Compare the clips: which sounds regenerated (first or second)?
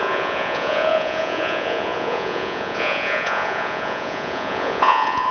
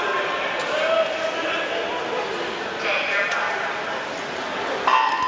first